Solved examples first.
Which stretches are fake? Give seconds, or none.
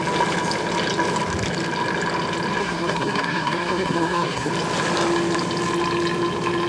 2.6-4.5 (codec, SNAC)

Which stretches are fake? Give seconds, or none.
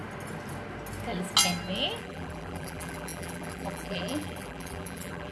2.0-5.3 (vocoder, BigVGAN v2)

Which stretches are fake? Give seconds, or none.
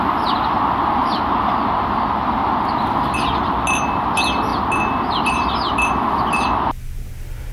1.0-2.5 (vocoder, BigVGAN v2)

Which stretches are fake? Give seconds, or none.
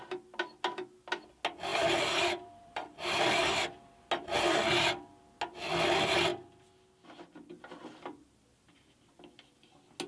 1.7-3.9 (vocoder, BigVGAN v2)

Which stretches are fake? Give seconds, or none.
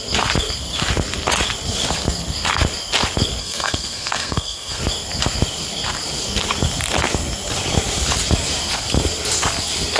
3.4-4.8 (codec, SNAC)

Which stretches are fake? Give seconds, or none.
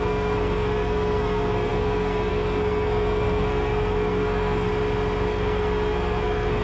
0.0-4.7 (codec, SNAC); 5.3-6.6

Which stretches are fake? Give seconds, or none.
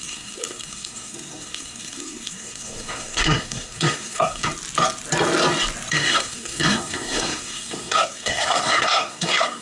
0.0-4.5 (codec, SNAC); 5.9-9.6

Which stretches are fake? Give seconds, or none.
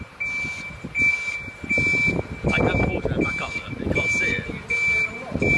none